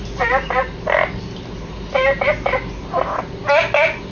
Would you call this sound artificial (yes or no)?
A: no